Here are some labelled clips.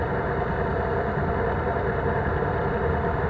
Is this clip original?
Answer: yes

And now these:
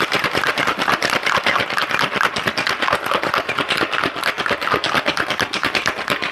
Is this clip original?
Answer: yes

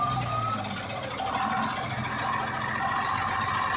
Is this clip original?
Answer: yes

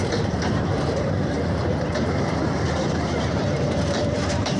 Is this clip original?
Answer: no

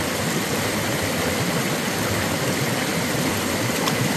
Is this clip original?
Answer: yes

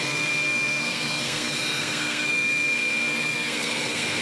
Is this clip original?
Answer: no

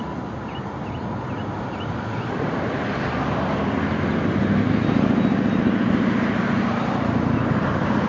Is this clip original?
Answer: yes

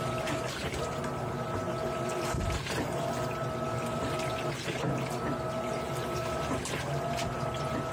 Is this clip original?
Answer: yes